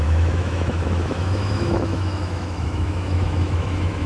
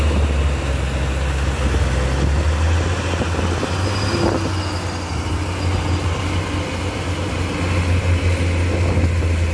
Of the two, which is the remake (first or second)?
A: first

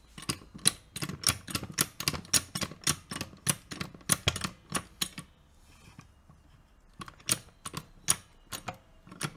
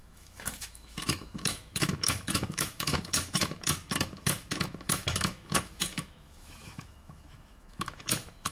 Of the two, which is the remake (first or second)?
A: second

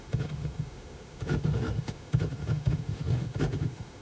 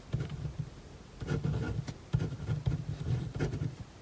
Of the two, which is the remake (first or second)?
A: first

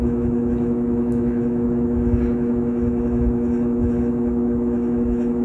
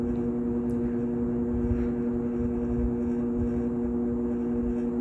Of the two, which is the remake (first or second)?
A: first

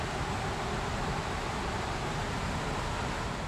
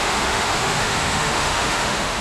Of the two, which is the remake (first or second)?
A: second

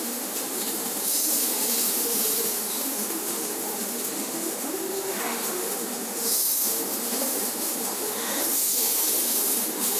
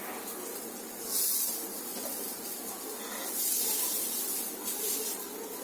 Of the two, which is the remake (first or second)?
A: first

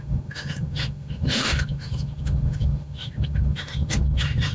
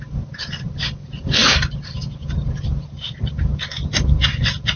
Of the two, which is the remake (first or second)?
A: first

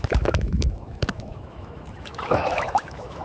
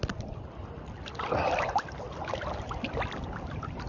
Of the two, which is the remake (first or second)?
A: first